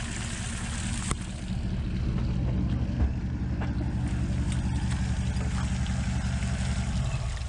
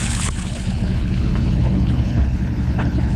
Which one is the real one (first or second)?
first